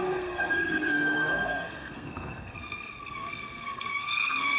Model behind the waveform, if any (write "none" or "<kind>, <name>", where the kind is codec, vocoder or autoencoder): codec, SNAC